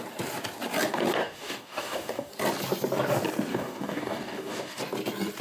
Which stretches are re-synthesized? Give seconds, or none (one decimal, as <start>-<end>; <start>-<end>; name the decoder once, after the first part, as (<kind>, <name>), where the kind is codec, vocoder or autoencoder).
1.2-2.3 (codec, DAC); 3.5-4.8